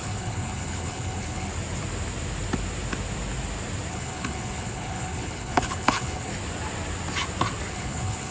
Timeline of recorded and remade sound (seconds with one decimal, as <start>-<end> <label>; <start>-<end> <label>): 0.0-1.5 remade; 1.5-3.9 recorded; 3.9-6.3 remade; 6.3-7.7 recorded; 7.7-8.3 remade